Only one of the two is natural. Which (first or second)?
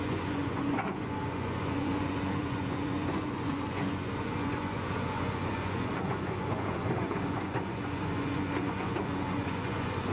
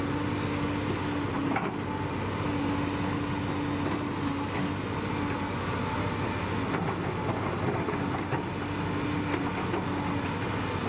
second